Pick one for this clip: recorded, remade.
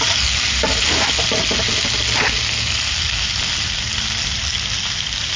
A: recorded